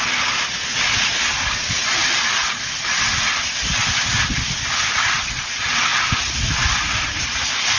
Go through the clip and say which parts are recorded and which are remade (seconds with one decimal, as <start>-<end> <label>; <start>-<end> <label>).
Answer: 0.0-5.9 recorded; 5.9-6.5 remade; 6.5-7.8 recorded